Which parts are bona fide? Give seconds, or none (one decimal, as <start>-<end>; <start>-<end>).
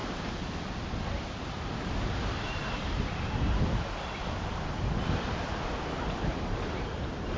0.0-1.4; 2.6-6.3